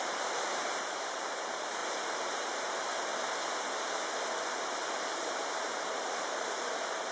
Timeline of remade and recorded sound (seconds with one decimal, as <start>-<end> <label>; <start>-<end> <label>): 0.0-3.1 remade; 3.1-4.5 recorded; 4.5-7.1 remade